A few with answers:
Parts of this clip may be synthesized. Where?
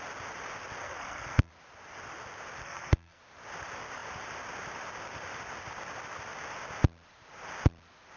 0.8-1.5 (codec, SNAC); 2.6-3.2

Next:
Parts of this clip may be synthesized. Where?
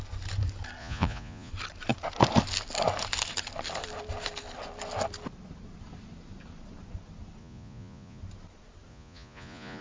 0.8-1.5 (vocoder, Vocos); 7.4-8.2; 8.9-9.8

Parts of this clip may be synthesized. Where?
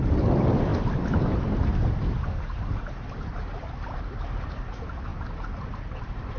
0.0-0.7 (vocoder, BigVGAN v2); 4.5-5.1; 6.0-6.4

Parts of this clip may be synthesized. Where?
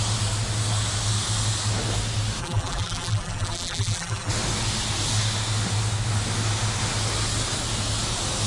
2.4-4.3 (vocoder, BigVGAN v2)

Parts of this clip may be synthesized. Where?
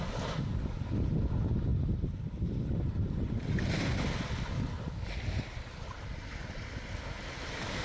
none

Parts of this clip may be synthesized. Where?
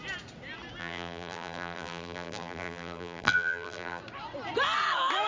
0.8-4.0 (vocoder, BigVGAN v2)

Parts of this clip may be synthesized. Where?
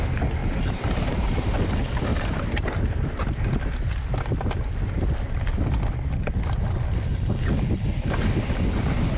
0.4-1.5 (vocoder, BigVGAN v2); 2.1-3.5